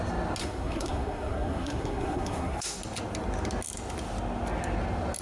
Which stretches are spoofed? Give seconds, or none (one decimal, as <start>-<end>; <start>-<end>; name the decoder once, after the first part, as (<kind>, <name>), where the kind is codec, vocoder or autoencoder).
0.4-2.8 (codec, SNAC)